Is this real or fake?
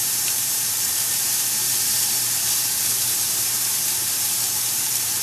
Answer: fake